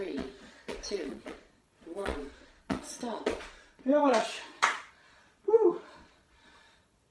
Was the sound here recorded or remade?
remade